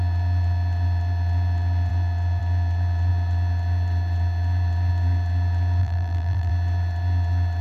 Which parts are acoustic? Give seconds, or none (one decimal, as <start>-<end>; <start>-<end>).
0.0-5.8; 6.5-7.6